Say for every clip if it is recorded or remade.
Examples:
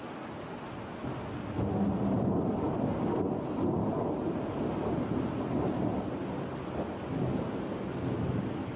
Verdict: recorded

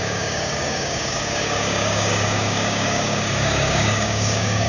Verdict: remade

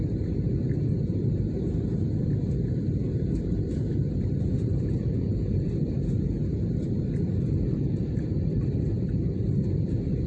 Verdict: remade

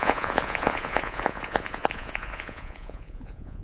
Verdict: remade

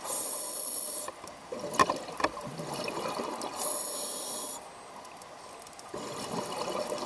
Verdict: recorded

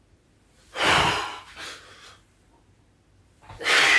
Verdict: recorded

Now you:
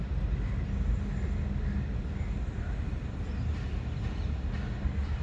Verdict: recorded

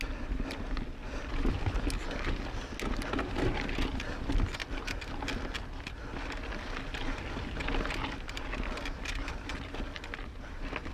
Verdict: recorded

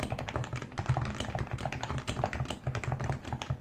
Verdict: remade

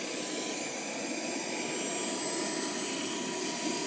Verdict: recorded